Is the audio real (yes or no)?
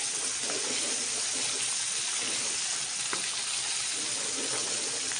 yes